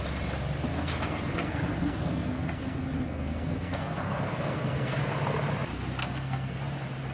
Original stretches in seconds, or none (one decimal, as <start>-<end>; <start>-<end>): 0.0-0.7; 5.0-6.0; 6.6-7.1

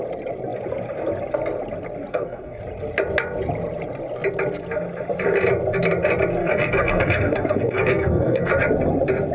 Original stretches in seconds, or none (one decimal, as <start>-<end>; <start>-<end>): 0.0-2.1; 2.6-6.4; 8.5-9.3

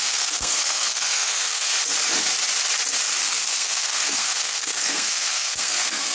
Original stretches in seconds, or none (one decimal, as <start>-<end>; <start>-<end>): 1.7-3.2

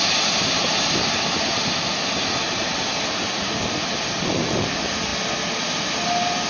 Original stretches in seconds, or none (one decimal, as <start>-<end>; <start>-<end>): 0.0-6.5

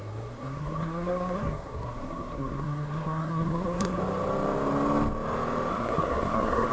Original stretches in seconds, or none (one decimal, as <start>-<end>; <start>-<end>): 4.0-5.7

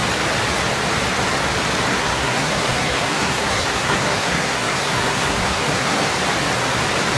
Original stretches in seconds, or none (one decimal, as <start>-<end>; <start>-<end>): 0.0-1.9; 6.1-7.2

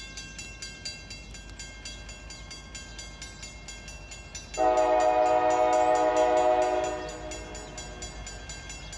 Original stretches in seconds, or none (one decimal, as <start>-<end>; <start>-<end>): 0.0-9.0

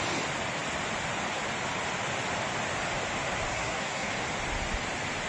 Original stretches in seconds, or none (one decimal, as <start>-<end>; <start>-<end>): 0.0-3.5; 4.1-5.3